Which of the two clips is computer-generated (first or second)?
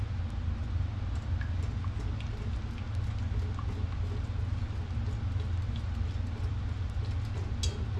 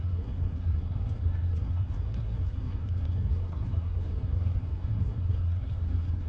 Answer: second